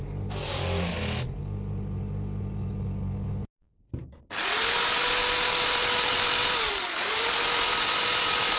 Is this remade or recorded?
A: recorded